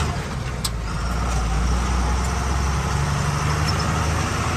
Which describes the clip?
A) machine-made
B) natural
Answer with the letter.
B